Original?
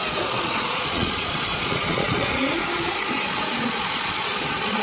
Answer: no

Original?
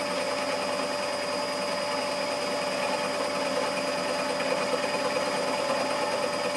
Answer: yes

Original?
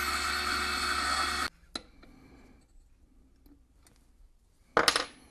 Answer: yes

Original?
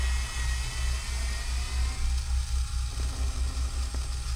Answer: yes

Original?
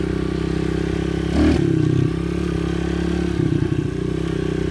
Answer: yes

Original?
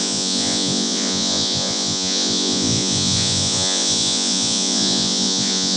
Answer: no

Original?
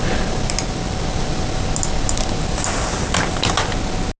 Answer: yes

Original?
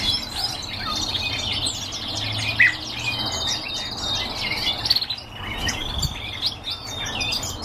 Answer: yes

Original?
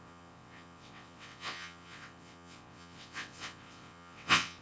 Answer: no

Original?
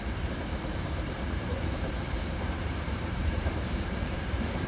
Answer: no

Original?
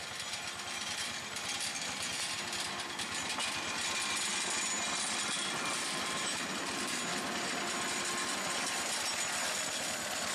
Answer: yes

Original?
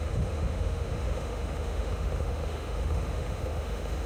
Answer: no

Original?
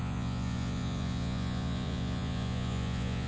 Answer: no